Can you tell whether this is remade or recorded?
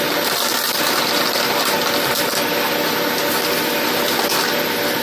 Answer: recorded